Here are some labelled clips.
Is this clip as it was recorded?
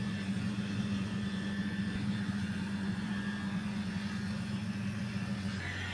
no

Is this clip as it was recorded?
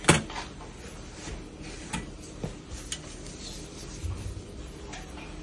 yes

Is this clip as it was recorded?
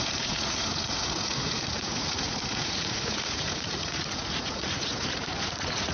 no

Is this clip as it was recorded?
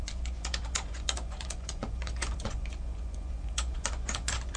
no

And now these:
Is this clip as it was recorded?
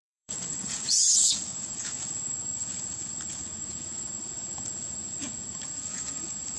no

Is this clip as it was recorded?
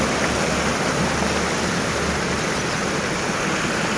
yes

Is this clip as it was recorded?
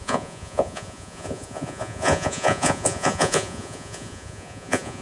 no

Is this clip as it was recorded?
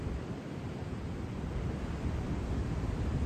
yes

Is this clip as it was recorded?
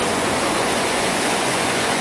no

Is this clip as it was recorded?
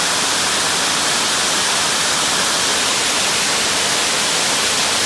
yes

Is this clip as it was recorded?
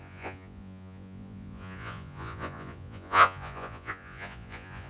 no